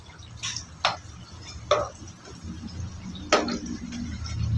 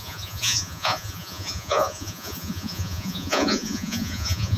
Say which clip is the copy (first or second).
second